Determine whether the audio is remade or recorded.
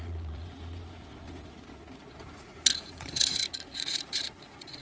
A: remade